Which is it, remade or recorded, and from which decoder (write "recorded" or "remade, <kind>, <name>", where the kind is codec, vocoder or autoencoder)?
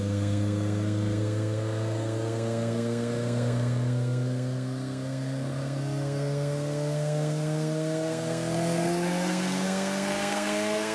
remade, codec, SNAC